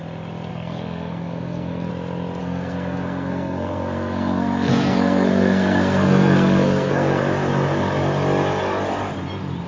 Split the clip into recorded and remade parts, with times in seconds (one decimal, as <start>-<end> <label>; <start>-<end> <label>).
0.0-0.5 recorded; 0.5-1.9 remade; 1.9-2.4 recorded; 2.4-7.2 remade; 7.2-9.7 recorded